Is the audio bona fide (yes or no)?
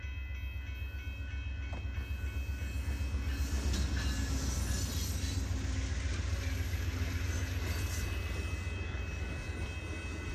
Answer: yes